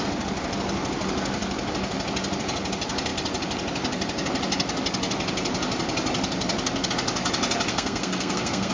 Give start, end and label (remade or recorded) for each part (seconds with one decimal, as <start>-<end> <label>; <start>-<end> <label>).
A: 0.0-7.7 recorded; 7.7-8.7 remade